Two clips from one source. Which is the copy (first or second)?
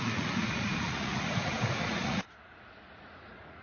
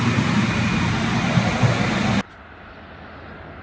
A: first